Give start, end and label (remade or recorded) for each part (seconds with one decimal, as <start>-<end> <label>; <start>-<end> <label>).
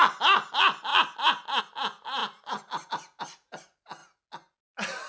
0.0-5.1 recorded